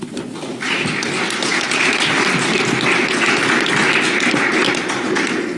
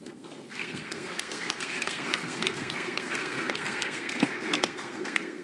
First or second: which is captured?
first